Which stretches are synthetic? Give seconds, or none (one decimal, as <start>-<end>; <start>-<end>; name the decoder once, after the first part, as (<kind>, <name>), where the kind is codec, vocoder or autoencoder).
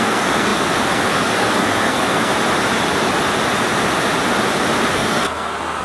0.0-2.3 (codec, SNAC); 4.9-5.8